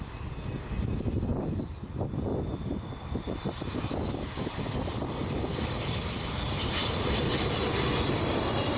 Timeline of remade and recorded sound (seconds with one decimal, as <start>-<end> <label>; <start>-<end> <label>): 0.0-1.3 recorded; 1.3-1.8 remade; 1.8-2.3 recorded; 2.3-4.9 remade; 4.9-5.5 recorded; 5.5-7.3 remade; 7.3-8.8 recorded